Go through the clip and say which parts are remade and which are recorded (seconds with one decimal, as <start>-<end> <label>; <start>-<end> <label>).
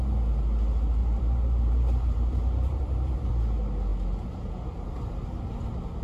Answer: 0.0-1.0 recorded; 1.0-3.3 remade; 3.3-6.0 recorded